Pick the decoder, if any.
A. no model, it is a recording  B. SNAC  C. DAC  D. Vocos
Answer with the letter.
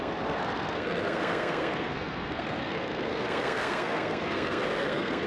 B